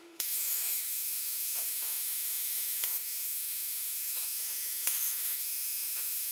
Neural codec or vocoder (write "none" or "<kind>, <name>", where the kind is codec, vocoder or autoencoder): autoencoder, DAC-VAE